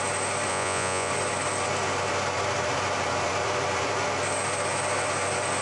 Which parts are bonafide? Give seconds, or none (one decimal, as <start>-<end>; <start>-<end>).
0.0-0.5; 1.1-5.6